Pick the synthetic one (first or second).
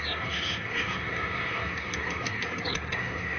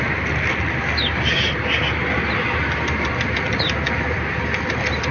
first